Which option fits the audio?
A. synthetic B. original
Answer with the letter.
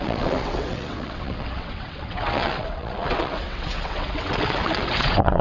A